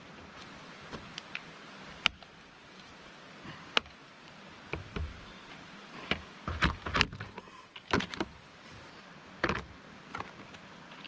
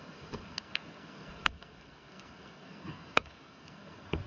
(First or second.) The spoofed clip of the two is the second